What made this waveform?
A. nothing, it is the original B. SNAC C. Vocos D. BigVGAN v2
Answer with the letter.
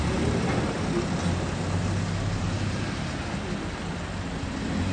A